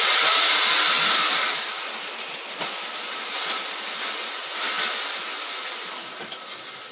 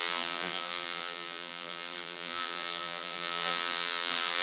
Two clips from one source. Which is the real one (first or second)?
first